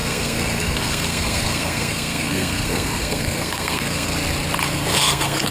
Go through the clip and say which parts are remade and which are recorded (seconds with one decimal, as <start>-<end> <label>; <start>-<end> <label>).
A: 0.0-4.1 remade; 4.1-4.7 recorded; 4.7-5.5 remade